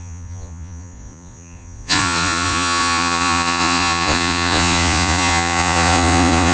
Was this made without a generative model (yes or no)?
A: no